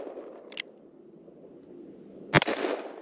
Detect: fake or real real